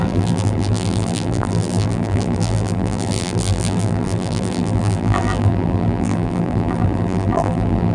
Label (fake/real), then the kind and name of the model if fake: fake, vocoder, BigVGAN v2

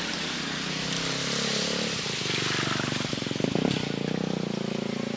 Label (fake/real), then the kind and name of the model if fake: real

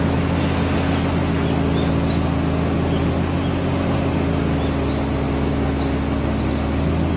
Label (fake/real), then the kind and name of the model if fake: real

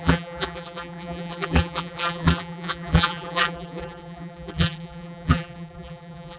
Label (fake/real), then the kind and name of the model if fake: fake, vocoder, BigVGAN v2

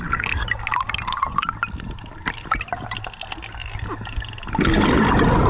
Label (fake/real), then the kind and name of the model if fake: real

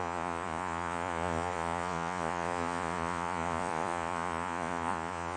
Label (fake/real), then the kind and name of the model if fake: fake, vocoder, Vocos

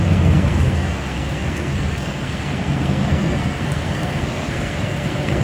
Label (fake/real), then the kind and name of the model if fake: fake, codec, SNAC